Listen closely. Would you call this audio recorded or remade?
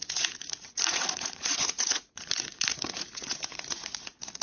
remade